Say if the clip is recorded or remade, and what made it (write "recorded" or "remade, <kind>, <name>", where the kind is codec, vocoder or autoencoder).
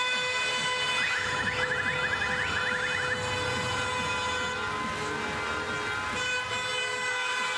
recorded